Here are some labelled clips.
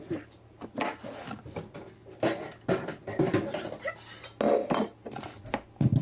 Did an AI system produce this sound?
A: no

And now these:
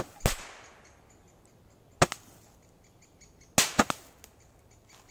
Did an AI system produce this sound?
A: no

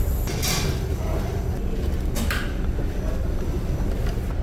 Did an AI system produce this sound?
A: no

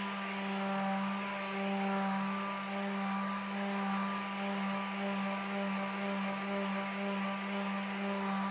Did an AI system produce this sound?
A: no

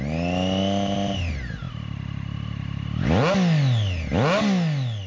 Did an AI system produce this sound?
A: no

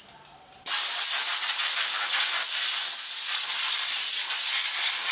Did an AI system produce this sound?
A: no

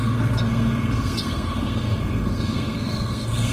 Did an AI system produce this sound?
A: yes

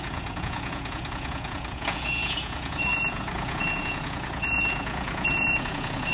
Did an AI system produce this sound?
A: yes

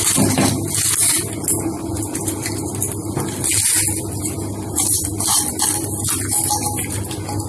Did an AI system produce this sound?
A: no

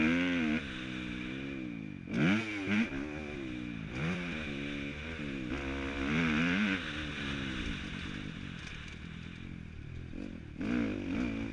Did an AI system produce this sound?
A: no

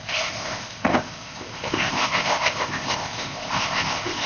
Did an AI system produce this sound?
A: yes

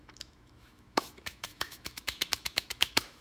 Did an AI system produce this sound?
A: yes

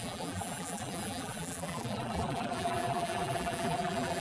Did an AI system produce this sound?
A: yes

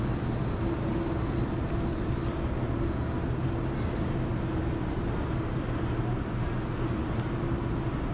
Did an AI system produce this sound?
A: no